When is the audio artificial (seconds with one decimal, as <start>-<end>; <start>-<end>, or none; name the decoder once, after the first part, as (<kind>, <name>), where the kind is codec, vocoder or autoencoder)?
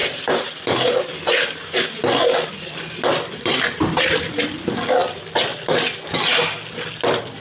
none